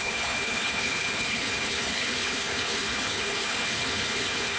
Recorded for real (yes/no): no